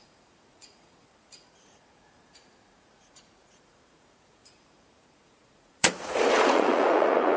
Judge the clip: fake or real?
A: fake